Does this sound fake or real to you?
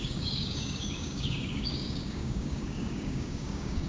fake